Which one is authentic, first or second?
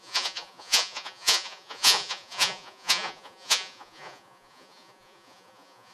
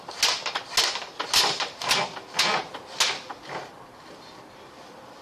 second